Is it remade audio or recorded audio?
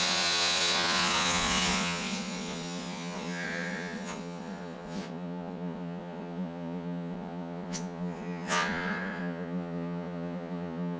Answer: remade